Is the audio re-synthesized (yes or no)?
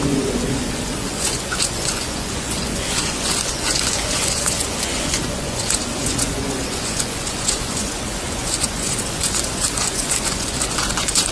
yes